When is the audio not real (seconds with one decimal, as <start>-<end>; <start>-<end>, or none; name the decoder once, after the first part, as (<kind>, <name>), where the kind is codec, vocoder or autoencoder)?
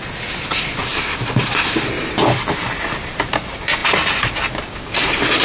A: none